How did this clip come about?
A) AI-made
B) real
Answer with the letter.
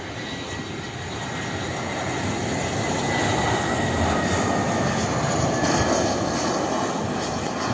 B